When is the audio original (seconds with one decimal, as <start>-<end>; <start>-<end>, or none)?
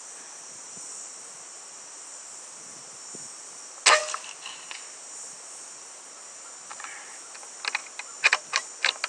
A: 0.0-9.1